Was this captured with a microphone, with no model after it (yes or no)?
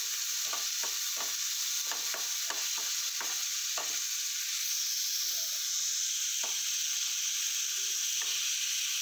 yes